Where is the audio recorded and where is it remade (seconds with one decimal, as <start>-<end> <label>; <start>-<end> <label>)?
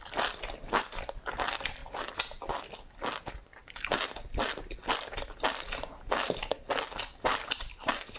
0.0-1.8 remade; 1.8-2.6 recorded; 2.6-8.2 remade